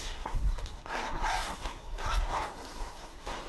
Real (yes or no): no